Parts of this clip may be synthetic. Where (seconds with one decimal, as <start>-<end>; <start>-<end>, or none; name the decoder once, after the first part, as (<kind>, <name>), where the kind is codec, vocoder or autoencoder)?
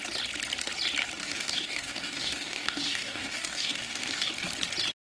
1.2-4.3 (codec, DAC)